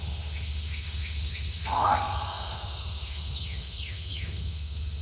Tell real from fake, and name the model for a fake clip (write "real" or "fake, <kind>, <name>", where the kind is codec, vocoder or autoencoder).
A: fake, autoencoder, DAC-VAE